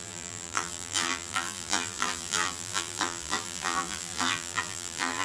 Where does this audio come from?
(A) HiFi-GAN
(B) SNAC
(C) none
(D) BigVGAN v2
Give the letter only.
D